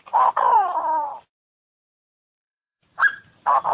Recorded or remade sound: remade